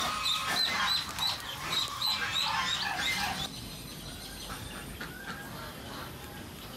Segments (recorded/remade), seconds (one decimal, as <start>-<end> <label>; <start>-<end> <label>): 0.0-6.8 recorded